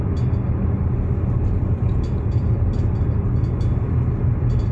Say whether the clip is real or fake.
real